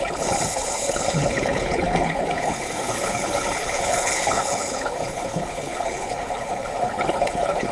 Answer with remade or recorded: remade